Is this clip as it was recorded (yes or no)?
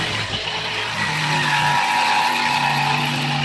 yes